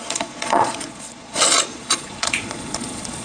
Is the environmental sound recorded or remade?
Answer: remade